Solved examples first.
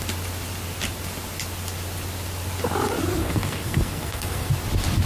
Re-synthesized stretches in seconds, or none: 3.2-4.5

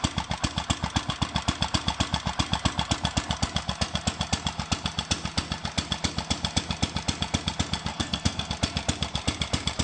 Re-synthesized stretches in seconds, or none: 7.9-8.5